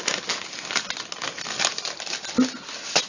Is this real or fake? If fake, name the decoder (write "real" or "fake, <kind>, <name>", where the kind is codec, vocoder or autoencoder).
real